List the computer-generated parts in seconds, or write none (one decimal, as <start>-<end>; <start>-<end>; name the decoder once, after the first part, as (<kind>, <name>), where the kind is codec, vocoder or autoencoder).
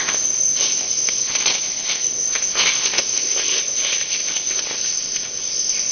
0.0-5.9 (codec, ZipCodec)